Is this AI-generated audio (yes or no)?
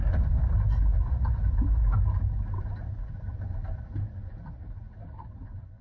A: yes